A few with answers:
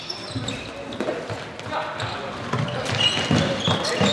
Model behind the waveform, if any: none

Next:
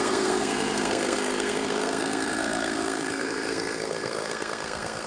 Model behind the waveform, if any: codec, SNAC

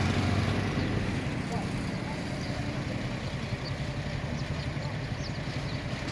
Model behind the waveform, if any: none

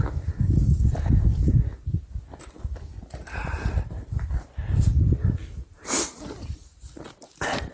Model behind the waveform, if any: none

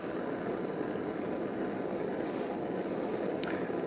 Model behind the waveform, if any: none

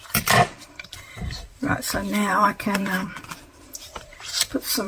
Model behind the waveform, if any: vocoder, BigVGAN v2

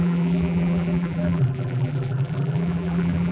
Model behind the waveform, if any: vocoder, BigVGAN v2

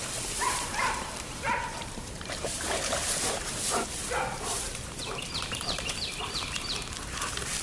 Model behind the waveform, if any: vocoder, BigVGAN v2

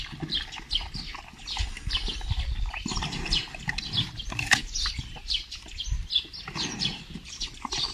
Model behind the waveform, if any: none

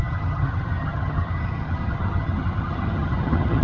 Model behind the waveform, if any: vocoder, HiFi-GAN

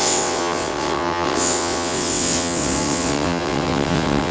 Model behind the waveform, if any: vocoder, WaveNeXt